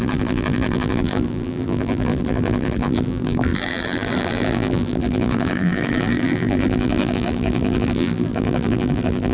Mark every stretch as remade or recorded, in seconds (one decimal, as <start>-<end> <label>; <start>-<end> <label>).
0.0-9.3 remade